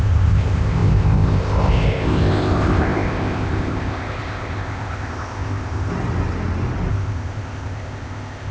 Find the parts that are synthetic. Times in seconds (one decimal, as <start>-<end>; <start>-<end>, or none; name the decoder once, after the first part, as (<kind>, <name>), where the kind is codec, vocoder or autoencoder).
0.0-5.9 (codec, ZipCodec); 6.9-8.5